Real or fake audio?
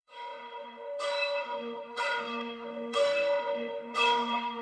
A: fake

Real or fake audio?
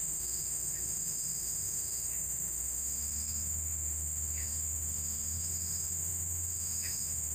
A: fake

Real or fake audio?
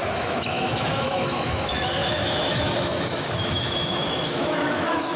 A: fake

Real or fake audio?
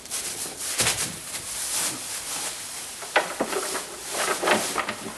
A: real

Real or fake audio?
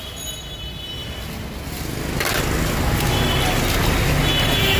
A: real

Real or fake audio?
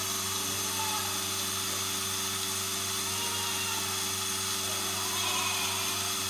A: real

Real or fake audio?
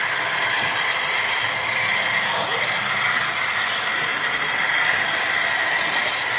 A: real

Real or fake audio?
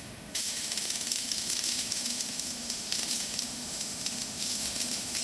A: fake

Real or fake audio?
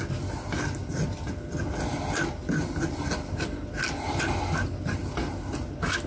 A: real